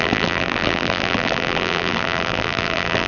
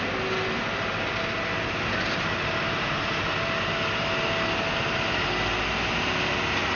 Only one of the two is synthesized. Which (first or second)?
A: first